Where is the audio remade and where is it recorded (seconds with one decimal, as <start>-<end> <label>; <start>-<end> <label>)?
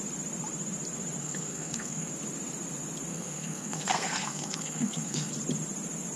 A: 0.0-1.2 recorded; 1.2-2.1 remade; 2.1-3.1 recorded; 3.1-5.3 remade; 5.3-6.2 recorded